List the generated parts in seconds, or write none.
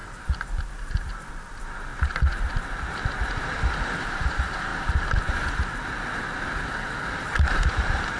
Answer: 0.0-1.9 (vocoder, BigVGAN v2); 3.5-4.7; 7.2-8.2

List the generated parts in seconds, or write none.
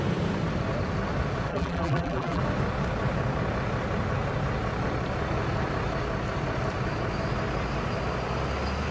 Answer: 1.5-2.4 (vocoder, BigVGAN v2)